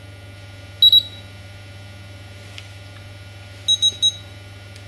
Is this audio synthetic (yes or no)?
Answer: no